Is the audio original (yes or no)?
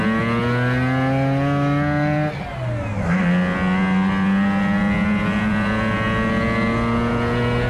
yes